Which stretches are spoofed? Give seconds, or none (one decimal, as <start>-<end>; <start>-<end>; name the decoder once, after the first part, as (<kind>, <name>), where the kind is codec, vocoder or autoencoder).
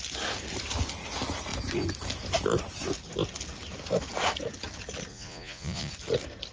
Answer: 5.1-5.9 (vocoder, Vocos)